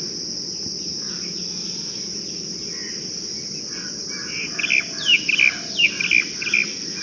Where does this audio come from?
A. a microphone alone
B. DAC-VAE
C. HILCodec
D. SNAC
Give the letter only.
A